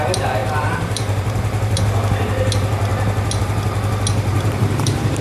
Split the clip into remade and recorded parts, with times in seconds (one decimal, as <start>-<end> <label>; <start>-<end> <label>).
0.0-0.4 recorded; 0.4-1.8 remade; 1.8-4.3 recorded; 4.3-5.2 remade